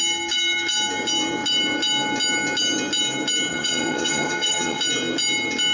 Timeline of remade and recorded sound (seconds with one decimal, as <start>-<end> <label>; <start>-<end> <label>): 0.0-3.5 recorded; 3.5-4.8 remade; 4.8-5.7 recorded